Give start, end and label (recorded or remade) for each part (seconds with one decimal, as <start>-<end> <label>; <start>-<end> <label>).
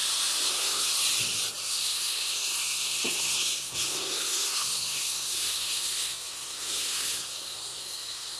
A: 0.0-0.5 recorded; 0.5-0.9 remade; 0.9-1.6 recorded; 1.6-8.4 remade